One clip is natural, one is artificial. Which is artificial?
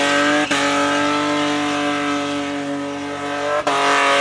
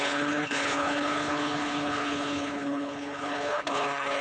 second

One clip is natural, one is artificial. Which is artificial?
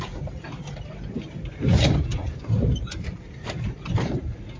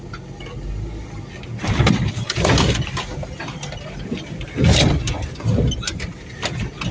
first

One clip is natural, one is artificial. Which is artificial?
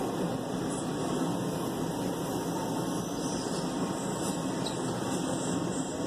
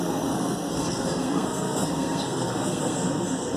second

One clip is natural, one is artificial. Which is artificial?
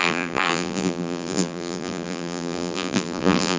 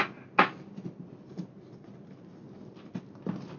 first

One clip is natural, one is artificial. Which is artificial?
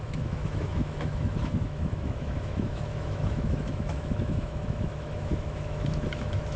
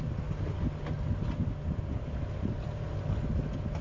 first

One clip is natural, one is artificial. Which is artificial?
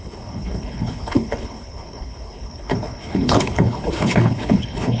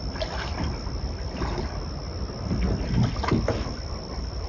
first